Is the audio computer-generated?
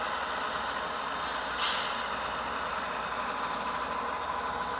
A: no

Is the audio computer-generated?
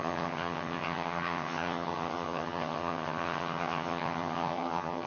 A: yes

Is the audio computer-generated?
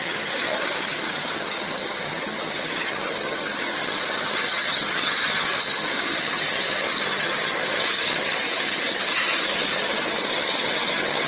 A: yes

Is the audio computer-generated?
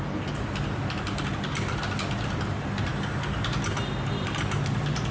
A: no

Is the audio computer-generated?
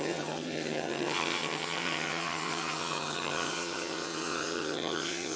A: yes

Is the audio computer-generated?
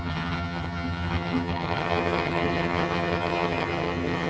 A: yes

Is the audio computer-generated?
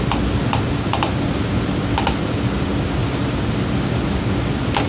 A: no